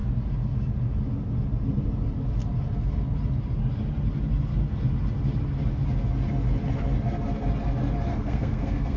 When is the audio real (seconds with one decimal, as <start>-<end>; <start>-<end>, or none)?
0.0-8.1